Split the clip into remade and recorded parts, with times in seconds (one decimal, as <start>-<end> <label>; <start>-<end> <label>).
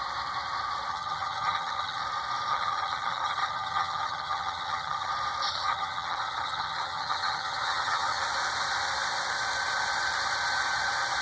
0.0-0.9 recorded; 0.9-2.0 remade; 2.0-2.5 recorded; 2.5-5.1 remade; 5.1-5.5 recorded; 5.5-8.2 remade; 8.2-11.2 recorded